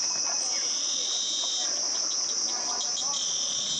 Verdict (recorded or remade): recorded